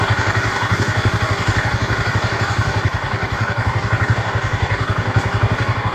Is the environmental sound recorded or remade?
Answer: remade